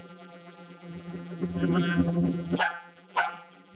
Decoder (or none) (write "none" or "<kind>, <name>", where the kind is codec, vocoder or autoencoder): vocoder, BigVGAN v2